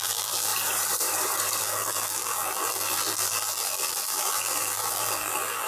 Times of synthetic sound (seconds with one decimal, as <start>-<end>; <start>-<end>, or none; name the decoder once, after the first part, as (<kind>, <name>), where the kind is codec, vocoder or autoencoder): 0.0-0.5 (vocoder, BigVGAN v2); 1.6-5.7